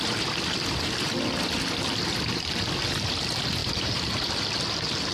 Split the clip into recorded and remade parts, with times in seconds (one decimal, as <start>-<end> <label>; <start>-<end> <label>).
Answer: 0.0-3.6 recorded; 3.6-4.5 remade; 4.5-5.1 recorded